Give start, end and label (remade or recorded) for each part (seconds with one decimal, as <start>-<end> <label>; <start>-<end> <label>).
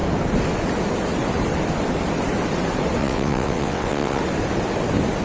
0.0-3.0 recorded; 3.0-4.2 remade; 4.2-5.2 recorded